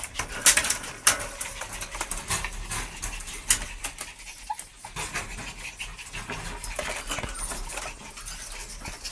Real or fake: real